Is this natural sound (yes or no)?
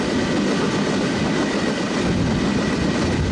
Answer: yes